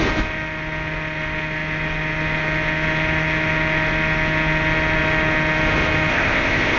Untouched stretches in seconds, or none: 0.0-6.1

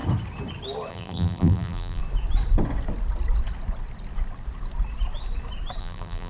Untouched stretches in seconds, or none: 0.0-0.9; 2.0-5.8

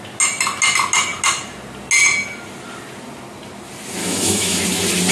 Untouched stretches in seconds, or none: 0.0-4.0; 4.6-5.1